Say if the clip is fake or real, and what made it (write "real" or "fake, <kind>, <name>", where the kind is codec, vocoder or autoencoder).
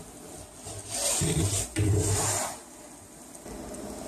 real